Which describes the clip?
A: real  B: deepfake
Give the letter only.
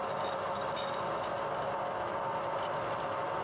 A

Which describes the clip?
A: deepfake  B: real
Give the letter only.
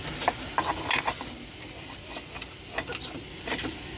B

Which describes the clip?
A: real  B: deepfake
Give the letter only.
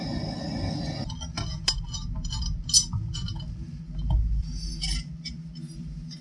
A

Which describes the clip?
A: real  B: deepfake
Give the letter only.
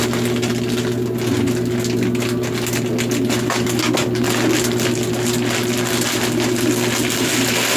A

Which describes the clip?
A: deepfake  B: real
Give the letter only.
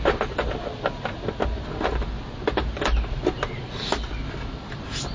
B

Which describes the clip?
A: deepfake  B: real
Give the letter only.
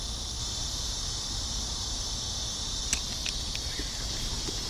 B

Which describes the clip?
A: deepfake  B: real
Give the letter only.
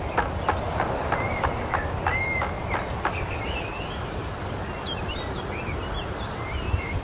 B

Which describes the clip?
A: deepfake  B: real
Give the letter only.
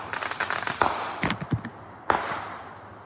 B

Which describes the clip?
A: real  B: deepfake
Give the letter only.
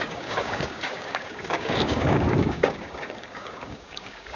B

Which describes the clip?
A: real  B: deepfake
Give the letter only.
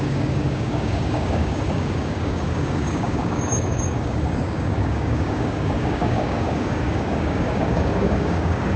B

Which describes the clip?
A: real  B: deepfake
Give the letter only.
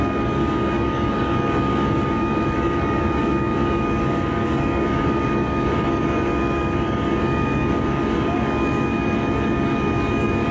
B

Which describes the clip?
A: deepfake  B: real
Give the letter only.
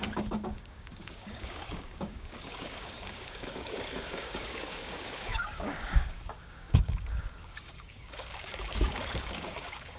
A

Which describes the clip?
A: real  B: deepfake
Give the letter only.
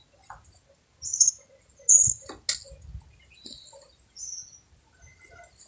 A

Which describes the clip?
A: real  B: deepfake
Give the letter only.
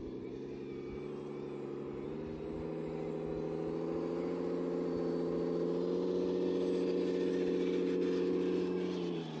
A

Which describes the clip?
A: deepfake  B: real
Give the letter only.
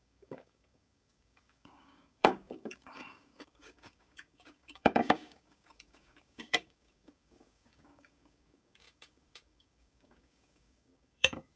A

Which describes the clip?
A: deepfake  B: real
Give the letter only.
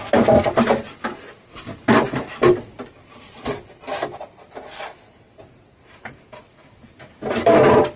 B